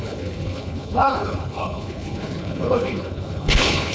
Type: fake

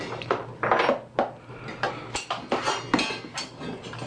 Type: real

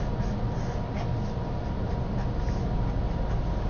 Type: real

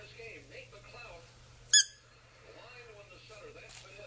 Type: real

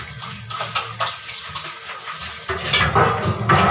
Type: real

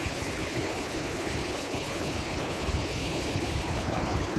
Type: fake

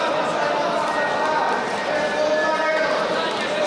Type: real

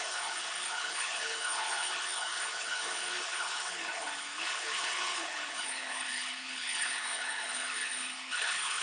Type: fake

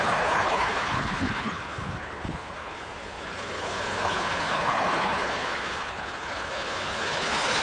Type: fake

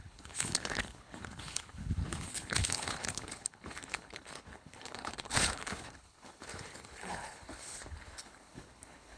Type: fake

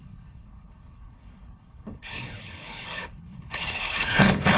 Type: fake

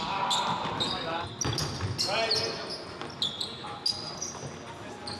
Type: real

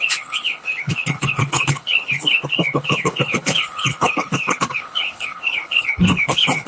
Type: fake